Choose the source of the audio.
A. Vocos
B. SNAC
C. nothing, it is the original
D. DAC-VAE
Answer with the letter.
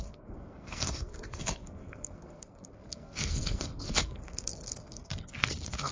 B